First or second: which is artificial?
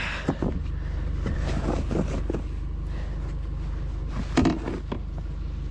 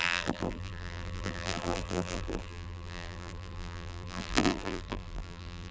second